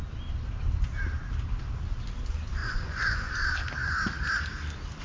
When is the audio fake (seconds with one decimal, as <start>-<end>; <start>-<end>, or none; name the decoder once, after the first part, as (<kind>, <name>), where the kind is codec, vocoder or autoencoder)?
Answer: 2.6-3.3 (vocoder, Vocos)